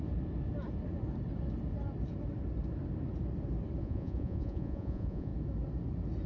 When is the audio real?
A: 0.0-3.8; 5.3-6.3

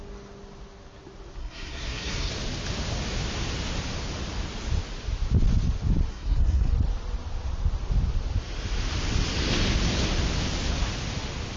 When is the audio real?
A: 0.0-1.4; 2.3-6.1; 6.7-11.6

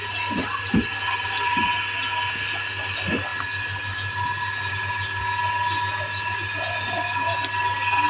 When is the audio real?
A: 0.0-8.1